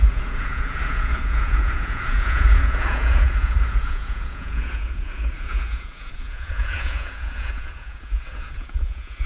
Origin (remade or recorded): remade